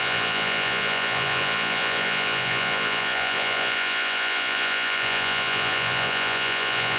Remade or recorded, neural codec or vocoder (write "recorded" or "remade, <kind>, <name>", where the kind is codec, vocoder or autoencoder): remade, vocoder, Vocos